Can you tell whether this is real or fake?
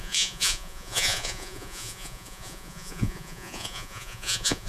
fake